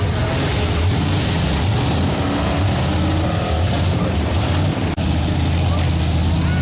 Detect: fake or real real